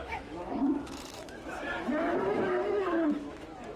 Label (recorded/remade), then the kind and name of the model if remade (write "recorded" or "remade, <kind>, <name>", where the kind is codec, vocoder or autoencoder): remade, autoencoder, DAC-VAE